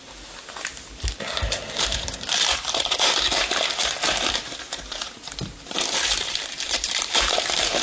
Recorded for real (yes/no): no